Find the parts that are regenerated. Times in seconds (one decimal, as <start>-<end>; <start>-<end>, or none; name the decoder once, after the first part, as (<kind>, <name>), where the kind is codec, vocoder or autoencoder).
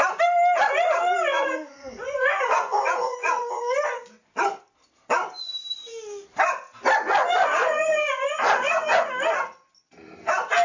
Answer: 1.3-3.7 (vocoder, Vocos); 7.2-9.1